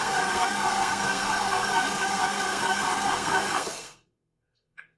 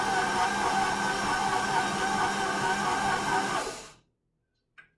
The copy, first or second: first